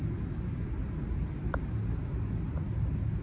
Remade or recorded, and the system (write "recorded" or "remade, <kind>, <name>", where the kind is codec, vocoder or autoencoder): recorded